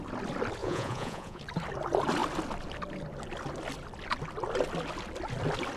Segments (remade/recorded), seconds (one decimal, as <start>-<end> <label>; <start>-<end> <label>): 0.0-0.6 recorded; 0.6-1.4 remade; 1.4-5.8 recorded